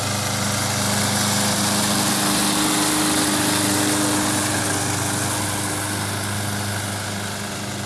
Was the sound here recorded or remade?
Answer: recorded